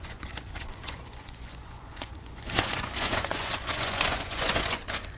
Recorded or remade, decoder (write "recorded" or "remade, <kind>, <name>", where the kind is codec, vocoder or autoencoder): remade, vocoder, Vocos